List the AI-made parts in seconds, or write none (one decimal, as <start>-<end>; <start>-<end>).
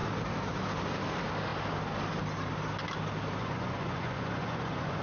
3.4-5.0